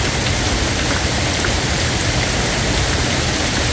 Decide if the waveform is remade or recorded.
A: recorded